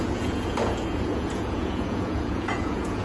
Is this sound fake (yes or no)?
yes